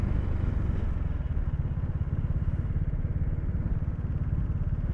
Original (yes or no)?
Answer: yes